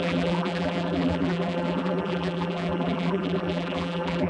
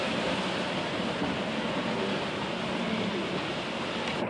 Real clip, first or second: second